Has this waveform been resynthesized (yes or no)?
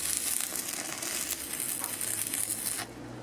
no